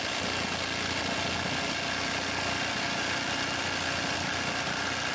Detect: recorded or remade recorded